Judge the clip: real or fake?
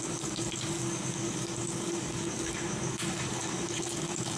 fake